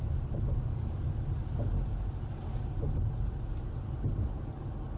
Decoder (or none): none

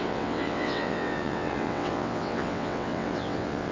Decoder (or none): vocoder, WaveNeXt